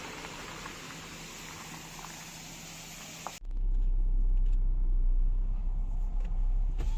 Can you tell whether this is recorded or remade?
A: recorded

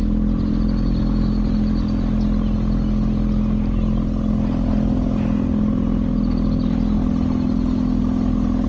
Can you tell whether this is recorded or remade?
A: recorded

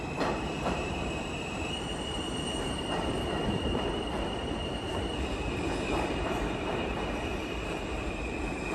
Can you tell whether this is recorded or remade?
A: remade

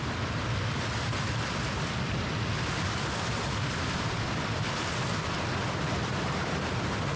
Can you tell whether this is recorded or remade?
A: recorded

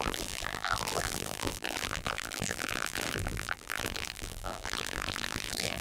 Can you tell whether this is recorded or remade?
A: remade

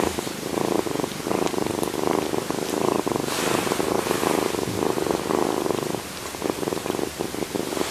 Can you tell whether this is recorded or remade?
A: recorded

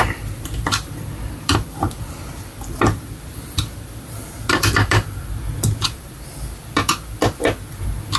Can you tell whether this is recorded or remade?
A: remade